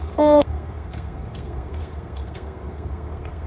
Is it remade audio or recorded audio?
remade